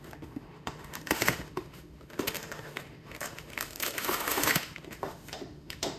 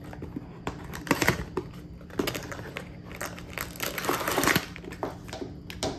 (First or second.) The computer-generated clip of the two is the first